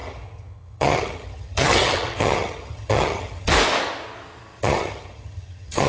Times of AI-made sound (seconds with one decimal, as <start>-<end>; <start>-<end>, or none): 0.0-3.5; 4.6-5.9